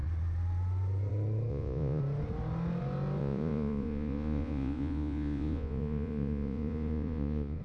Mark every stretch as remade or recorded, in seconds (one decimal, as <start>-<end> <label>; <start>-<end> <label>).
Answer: 0.0-1.5 recorded; 1.5-2.0 remade; 2.0-3.2 recorded; 3.2-7.6 remade